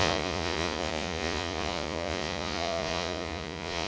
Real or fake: fake